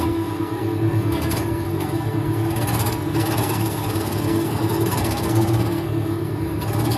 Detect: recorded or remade remade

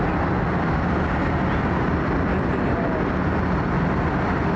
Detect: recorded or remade recorded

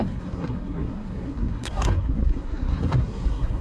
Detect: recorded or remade remade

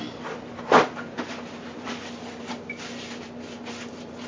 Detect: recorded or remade remade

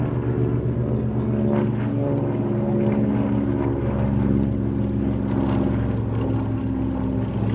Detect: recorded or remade recorded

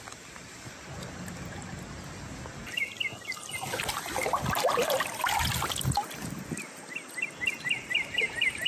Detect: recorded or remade recorded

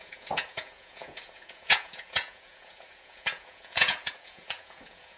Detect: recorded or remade remade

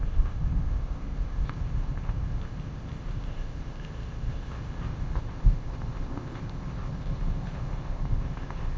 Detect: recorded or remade remade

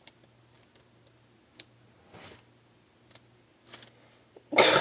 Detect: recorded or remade recorded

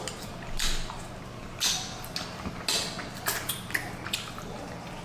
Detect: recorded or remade recorded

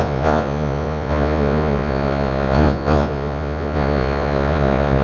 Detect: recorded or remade remade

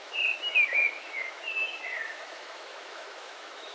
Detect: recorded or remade remade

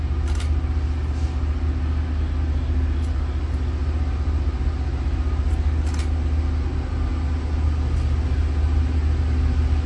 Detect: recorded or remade recorded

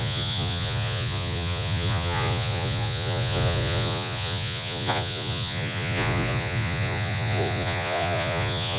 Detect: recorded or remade remade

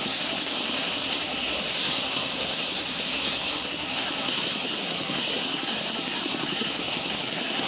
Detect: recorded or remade remade